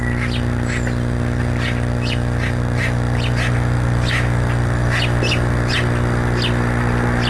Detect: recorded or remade recorded